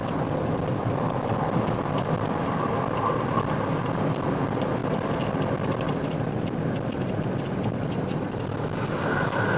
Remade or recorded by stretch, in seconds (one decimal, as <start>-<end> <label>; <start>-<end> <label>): 0.0-9.6 recorded